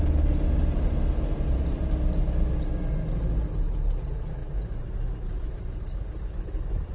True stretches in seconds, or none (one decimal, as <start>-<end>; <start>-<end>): 0.0-6.9